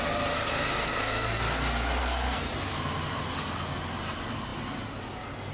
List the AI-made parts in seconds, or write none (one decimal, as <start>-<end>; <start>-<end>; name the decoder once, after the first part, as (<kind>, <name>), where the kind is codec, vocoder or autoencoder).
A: 0.8-1.4 (codec, SNAC); 2.0-2.5